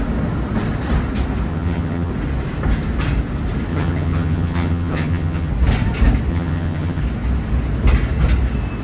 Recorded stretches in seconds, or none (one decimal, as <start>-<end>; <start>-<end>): 0.0-1.5; 2.1-3.7; 5.5-6.3; 7.0-8.8